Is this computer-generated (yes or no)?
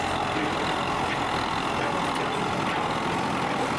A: no